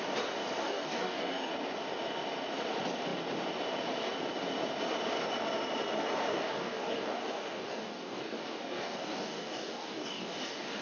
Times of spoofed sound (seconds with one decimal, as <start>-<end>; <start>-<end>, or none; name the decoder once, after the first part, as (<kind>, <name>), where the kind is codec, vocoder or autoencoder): 0.6-1.5 (codec, DAC); 6.3-10.8